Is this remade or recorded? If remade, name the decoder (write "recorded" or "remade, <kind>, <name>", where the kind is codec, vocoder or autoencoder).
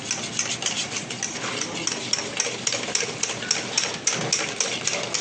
recorded